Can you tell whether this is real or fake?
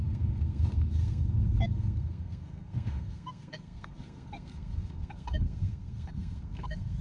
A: fake